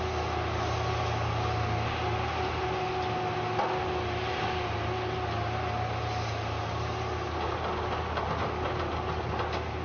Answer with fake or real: real